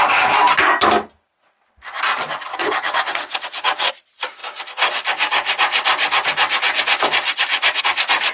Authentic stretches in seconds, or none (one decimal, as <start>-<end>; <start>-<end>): 0.0-2.5; 3.9-8.3